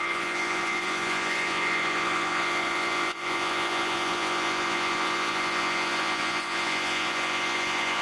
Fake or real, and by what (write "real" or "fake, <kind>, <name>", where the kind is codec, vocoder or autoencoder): fake, vocoder, Vocos